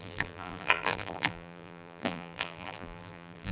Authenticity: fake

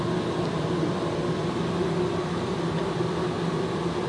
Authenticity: real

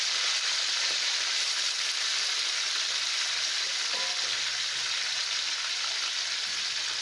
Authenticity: real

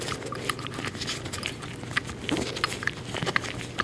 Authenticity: real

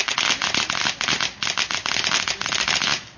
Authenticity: real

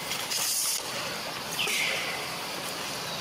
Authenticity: real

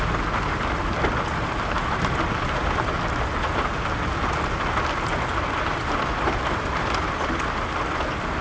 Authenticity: real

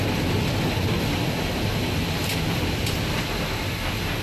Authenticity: real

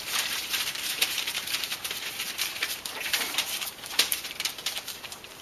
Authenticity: fake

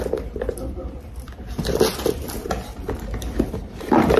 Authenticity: real